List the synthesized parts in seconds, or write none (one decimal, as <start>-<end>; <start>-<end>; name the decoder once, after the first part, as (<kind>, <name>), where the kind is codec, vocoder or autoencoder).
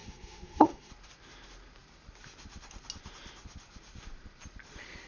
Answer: 0.0-0.9 (codec, SNAC)